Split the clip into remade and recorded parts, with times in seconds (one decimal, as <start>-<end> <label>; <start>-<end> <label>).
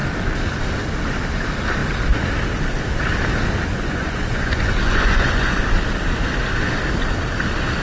0.0-3.7 recorded; 3.7-5.6 remade; 5.6-7.8 recorded